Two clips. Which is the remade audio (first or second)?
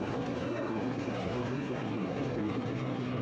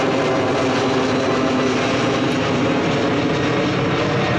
first